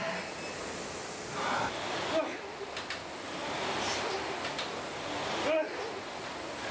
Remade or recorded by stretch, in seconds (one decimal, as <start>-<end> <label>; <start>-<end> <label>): 0.0-6.7 recorded